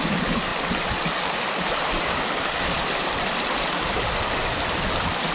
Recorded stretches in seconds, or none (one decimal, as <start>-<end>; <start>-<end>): 0.0-5.3